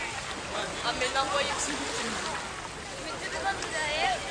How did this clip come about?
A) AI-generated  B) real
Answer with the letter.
B